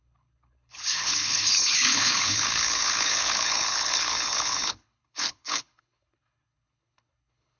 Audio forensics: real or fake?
fake